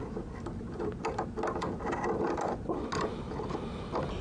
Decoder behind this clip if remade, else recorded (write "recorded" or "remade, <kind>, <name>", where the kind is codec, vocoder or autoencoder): recorded